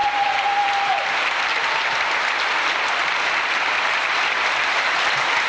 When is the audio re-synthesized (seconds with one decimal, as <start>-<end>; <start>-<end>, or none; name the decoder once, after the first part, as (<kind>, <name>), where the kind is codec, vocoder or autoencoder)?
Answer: none